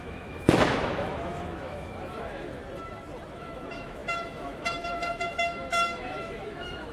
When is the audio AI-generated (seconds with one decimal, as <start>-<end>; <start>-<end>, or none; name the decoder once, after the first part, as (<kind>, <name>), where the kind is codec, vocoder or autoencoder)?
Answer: 0.0-2.6 (autoencoder, DAC-VAE); 3.3-6.9